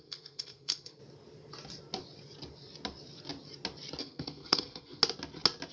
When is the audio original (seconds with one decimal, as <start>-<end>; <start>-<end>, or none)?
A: 1.0-4.0; 5.0-5.7